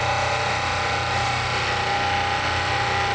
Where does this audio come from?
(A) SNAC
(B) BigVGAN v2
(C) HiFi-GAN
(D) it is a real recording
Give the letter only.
D